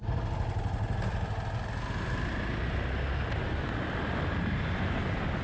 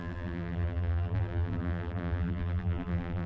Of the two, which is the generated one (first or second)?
second